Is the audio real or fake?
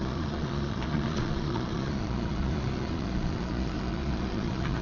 fake